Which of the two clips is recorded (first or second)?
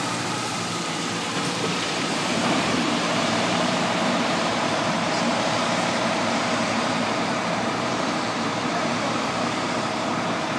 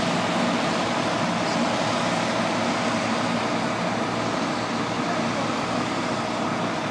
second